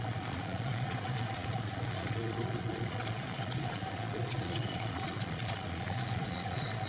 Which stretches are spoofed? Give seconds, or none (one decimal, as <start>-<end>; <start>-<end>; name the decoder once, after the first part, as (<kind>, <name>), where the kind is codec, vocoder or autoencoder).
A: 0.0-6.9 (vocoder, Vocos)